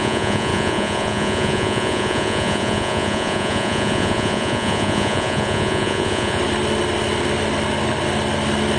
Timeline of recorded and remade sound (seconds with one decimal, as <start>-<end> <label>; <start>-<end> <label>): 0.0-6.4 remade; 6.4-8.8 recorded